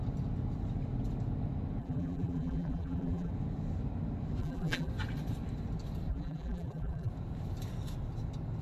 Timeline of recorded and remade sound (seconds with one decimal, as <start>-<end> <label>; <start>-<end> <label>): 0.0-1.8 recorded; 1.8-3.3 remade; 3.3-4.4 recorded; 4.4-4.9 remade; 4.9-6.1 recorded; 6.1-7.1 remade; 7.1-8.6 recorded